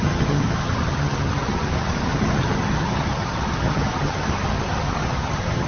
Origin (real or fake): fake